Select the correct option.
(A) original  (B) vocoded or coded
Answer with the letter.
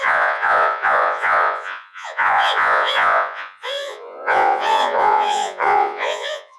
B